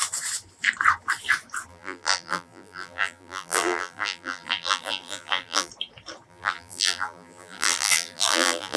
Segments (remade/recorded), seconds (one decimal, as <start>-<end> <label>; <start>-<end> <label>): 0.0-1.7 recorded; 1.7-5.7 remade; 5.7-6.3 recorded; 6.3-8.8 remade